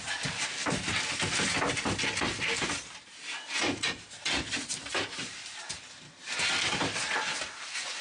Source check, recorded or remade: recorded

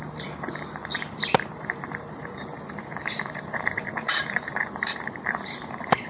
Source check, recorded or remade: remade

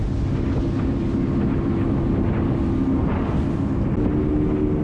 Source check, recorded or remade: recorded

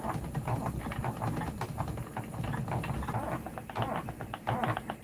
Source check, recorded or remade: recorded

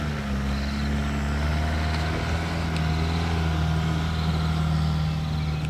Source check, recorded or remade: recorded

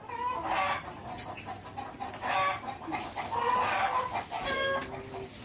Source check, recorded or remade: recorded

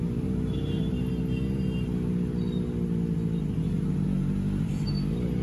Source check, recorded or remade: recorded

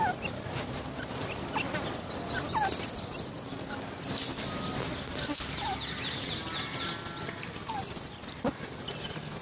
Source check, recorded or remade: recorded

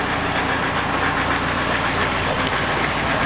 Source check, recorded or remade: recorded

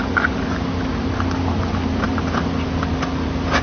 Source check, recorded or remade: remade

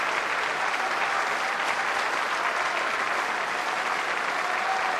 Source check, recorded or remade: recorded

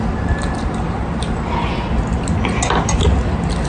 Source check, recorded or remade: recorded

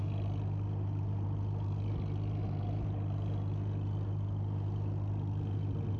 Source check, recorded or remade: recorded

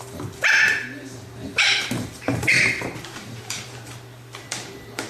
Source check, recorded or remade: remade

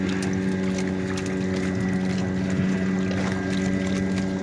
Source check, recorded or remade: recorded